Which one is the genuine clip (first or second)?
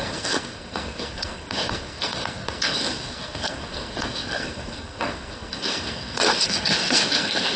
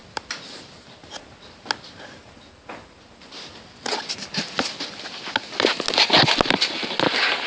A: second